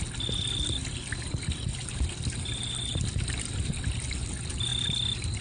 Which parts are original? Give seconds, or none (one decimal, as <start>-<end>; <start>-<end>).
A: 0.0-5.4